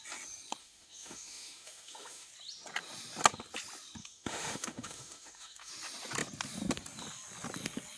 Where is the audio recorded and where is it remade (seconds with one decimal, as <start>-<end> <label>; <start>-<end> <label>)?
0.0-0.6 recorded; 0.6-2.3 remade; 2.3-4.0 recorded; 4.0-5.7 remade; 5.7-8.0 recorded